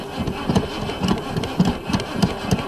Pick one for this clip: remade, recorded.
recorded